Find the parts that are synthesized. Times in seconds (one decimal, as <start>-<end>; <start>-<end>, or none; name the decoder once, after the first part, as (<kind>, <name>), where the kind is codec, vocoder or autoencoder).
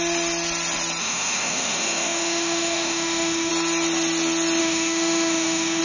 1.0-3.5 (autoencoder, DAC-VAE); 4.6-5.8